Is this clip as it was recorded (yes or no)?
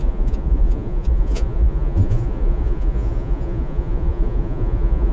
no